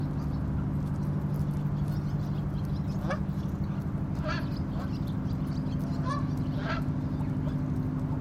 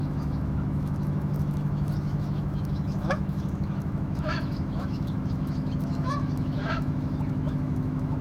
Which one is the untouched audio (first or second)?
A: first